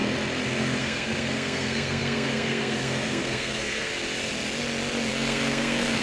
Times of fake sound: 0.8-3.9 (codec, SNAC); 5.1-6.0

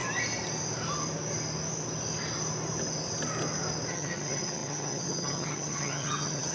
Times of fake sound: 3.9-6.5 (vocoder, HiFi-GAN)

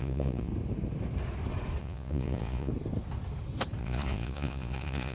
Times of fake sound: 0.0-0.5 (vocoder, Vocos); 1.8-2.7; 3.8-5.1

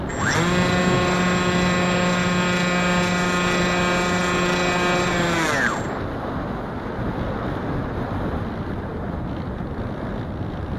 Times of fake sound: none